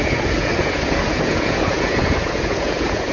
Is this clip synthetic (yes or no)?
yes